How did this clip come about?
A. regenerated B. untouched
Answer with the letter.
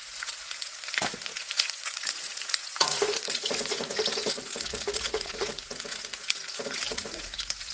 A